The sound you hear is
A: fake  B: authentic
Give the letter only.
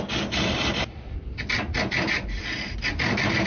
B